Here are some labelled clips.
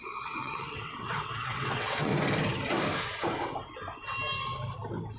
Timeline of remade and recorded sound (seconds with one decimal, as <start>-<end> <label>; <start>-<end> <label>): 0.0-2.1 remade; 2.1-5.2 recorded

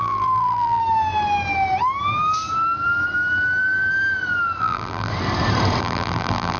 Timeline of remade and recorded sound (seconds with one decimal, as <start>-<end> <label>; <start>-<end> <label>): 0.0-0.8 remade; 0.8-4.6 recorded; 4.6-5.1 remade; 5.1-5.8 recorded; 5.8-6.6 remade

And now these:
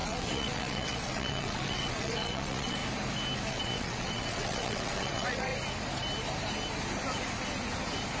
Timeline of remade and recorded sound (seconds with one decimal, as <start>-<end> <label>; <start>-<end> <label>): 0.0-2.8 remade; 2.8-3.5 recorded; 3.5-5.5 remade; 5.5-8.2 recorded

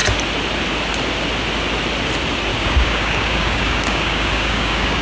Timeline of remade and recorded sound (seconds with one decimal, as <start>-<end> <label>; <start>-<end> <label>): 0.0-2.5 recorded; 2.5-5.0 remade